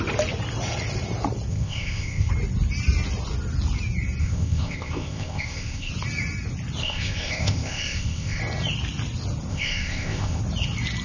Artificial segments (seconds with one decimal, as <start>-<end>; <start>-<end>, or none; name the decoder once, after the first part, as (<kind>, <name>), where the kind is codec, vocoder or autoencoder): 1.5-2.3 (codec, ZipCodec); 4.2-5.9; 6.8-8.4; 9.5-10.4